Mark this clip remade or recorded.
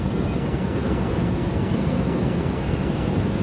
remade